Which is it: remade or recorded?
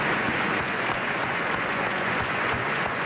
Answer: remade